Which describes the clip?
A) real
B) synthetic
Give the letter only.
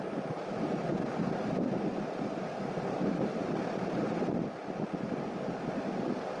A